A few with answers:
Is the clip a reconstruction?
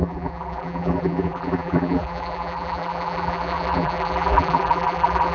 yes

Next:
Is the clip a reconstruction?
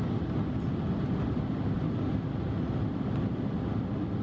no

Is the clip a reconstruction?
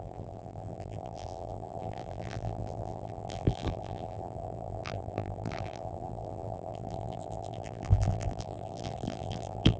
yes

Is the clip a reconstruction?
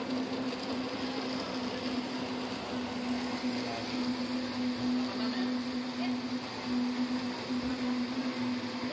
no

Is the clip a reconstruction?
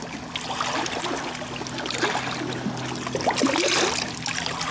no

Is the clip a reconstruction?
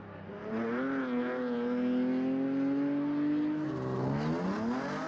no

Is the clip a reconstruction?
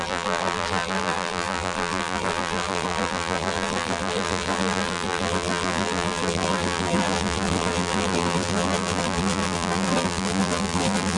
yes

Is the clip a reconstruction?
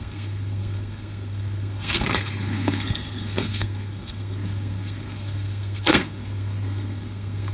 yes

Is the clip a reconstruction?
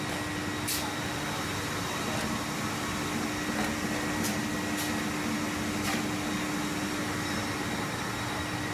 no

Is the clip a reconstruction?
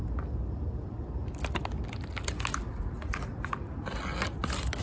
no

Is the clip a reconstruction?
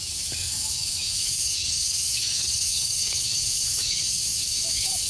yes